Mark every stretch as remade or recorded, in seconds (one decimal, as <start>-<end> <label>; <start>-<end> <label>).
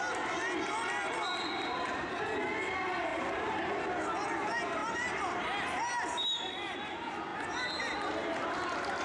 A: 0.0-3.1 recorded; 3.1-3.7 remade; 3.7-4.8 recorded; 4.8-5.4 remade; 5.4-9.0 recorded